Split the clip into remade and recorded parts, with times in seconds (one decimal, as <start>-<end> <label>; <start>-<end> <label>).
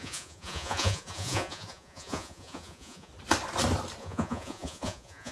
0.0-3.1 remade; 3.1-4.0 recorded; 4.0-5.3 remade